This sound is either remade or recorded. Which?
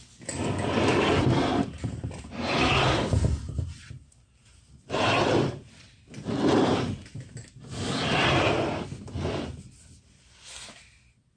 recorded